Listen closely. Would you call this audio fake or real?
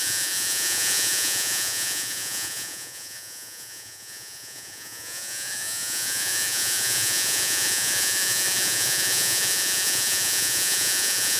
fake